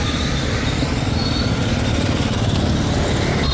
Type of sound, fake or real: real